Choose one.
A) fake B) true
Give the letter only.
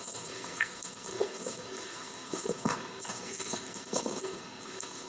A